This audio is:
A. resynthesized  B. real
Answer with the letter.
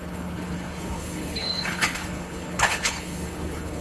A